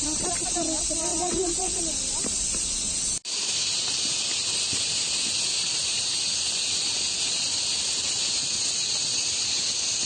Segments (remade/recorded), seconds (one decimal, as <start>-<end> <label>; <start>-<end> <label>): 0.0-1.1 recorded; 1.1-1.8 remade; 1.8-10.0 recorded